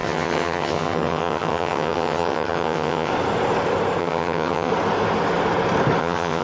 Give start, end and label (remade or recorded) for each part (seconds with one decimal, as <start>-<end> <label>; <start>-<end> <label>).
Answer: 0.0-3.1 remade; 3.1-4.0 recorded; 4.0-4.7 remade; 4.7-6.0 recorded; 6.0-6.4 remade